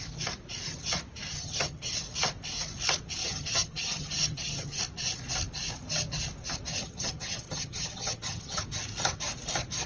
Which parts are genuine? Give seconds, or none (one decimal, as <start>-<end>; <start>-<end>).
0.0-1.3; 1.9-3.2; 4.8-6.8; 8.6-9.9